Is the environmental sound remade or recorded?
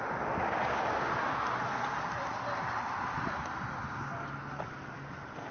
recorded